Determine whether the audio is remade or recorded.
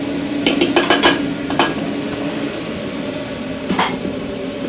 recorded